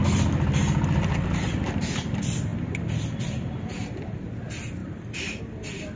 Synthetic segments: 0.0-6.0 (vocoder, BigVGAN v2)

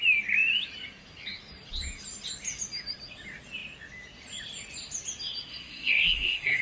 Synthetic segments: 5.5-6.6 (codec, SNAC)